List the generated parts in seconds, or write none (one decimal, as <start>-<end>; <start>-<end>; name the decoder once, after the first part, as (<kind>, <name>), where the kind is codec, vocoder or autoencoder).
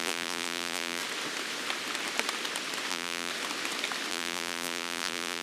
0.0-1.0 (vocoder, BigVGAN v2); 2.9-3.3; 4.1-5.4